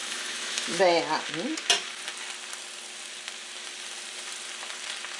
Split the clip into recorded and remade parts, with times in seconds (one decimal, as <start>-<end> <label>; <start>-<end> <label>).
0.0-0.8 remade; 0.8-5.2 recorded